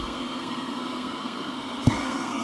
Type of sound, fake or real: fake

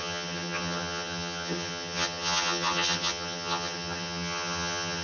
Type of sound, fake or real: fake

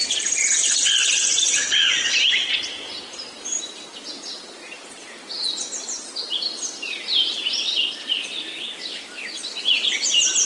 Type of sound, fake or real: real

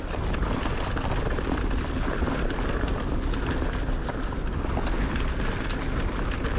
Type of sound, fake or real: real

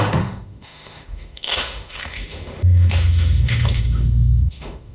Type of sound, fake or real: fake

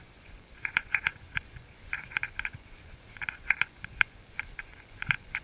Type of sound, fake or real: fake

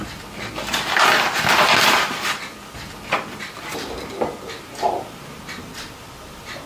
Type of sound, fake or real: real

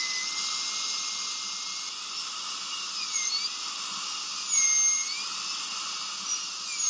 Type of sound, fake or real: real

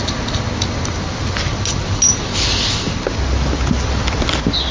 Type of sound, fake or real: real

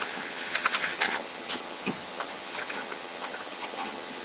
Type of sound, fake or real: fake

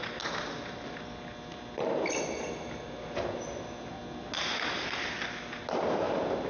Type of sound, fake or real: real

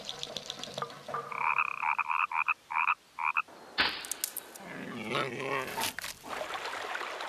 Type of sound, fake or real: real